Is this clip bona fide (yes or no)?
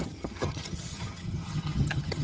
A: no